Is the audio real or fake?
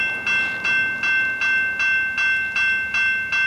real